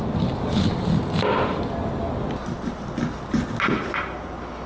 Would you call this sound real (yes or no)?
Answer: yes